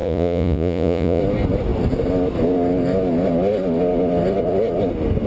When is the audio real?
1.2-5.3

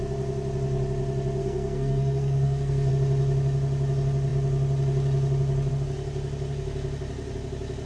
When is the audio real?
0.0-1.4; 2.9-7.9

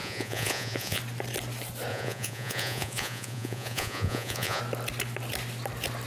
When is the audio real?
1.0-1.9; 4.6-6.1

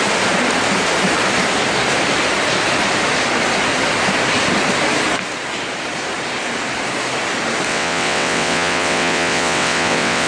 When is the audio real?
0.0-7.7

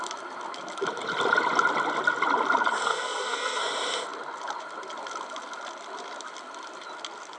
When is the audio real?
0.0-2.9; 3.6-7.4